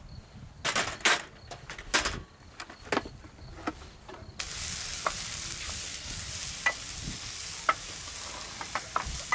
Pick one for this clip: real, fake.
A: real